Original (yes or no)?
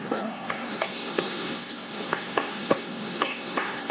no